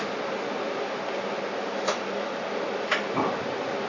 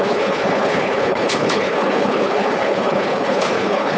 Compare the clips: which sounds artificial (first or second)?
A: second